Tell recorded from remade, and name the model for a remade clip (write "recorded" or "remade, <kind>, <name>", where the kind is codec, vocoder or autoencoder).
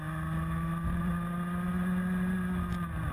recorded